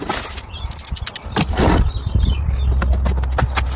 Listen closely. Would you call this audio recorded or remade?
recorded